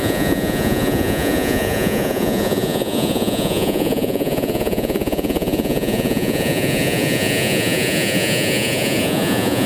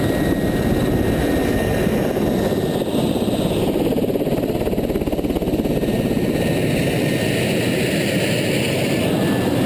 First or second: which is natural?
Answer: second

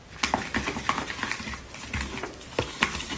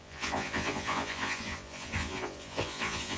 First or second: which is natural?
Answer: first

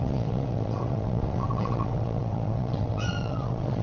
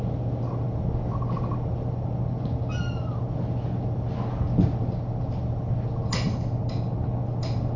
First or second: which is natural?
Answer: second